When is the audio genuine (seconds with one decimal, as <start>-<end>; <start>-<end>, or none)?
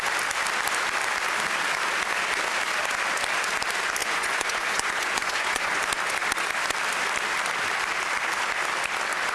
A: 0.0-4.0; 5.8-9.3